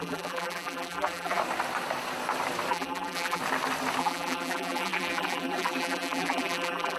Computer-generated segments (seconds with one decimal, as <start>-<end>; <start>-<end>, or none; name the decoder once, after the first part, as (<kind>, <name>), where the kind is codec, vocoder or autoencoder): 0.0-1.4 (vocoder, BigVGAN v2); 2.7-3.4; 4.0-7.0